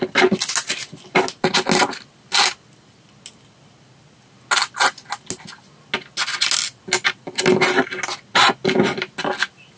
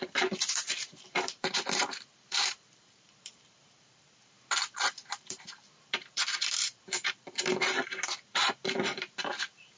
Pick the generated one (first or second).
second